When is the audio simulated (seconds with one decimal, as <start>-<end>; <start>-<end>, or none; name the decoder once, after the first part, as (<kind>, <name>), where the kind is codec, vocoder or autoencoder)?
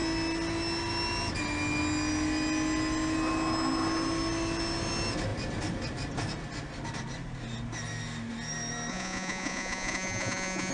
8.9-10.7 (vocoder, Vocos)